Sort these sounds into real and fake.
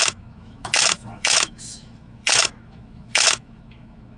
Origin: fake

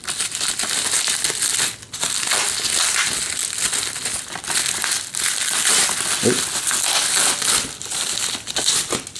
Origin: real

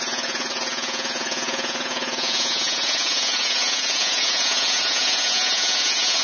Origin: fake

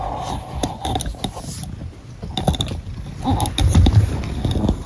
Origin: real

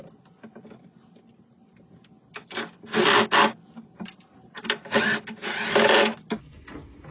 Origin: real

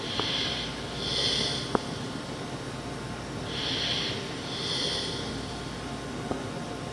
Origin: real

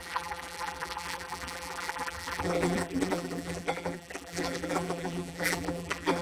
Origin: fake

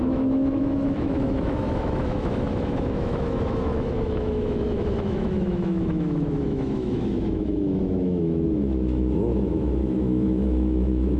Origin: fake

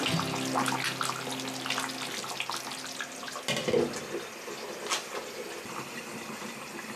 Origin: real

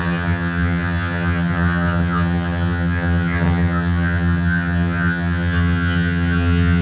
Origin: fake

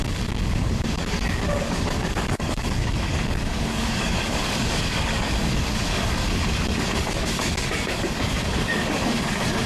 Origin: fake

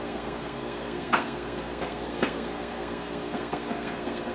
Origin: fake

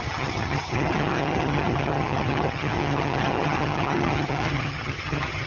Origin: fake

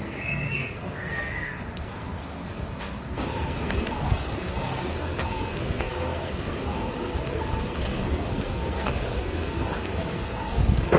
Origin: fake